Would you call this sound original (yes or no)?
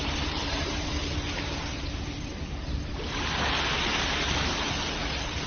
no